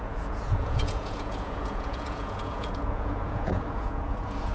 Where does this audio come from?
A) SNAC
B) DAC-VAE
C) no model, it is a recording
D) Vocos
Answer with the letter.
D